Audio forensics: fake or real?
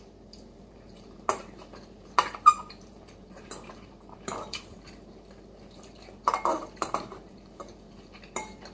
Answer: fake